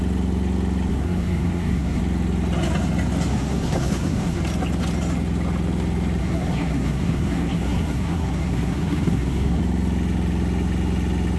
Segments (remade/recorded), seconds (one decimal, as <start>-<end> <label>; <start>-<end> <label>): 0.0-0.9 recorded; 0.9-2.0 remade; 2.0-3.3 recorded; 3.3-4.4 remade; 4.4-6.2 recorded; 6.2-9.6 remade; 9.6-11.4 recorded

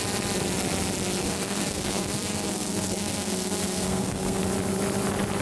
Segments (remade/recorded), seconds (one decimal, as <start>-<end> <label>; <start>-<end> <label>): 0.0-1.2 recorded; 1.2-4.4 remade; 4.4-5.4 recorded